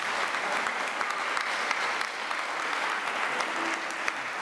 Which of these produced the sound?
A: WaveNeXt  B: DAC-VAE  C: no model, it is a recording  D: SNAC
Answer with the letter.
C